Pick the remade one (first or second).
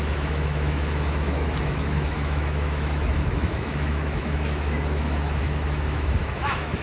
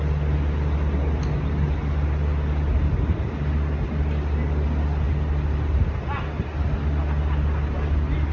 first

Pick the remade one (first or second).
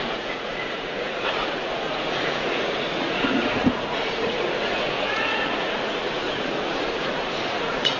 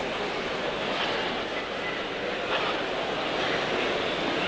first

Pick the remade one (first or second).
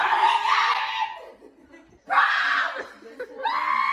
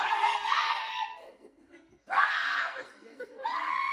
second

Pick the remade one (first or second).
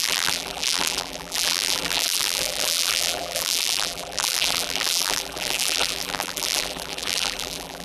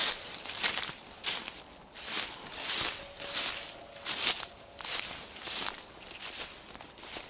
first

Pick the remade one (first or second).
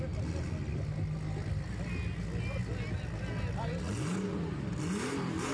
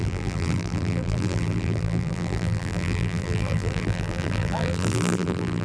second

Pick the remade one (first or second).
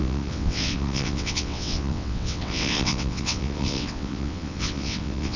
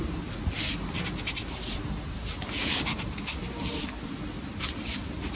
first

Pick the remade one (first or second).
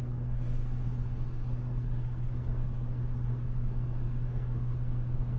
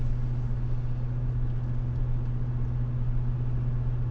first